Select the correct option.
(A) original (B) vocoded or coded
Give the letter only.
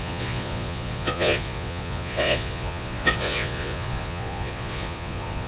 B